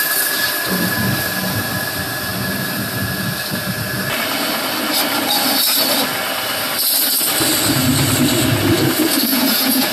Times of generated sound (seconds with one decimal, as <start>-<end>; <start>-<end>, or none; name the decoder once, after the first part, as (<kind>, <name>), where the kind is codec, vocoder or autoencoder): 9.3-9.9 (vocoder, Vocos)